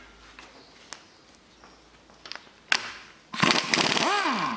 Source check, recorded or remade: recorded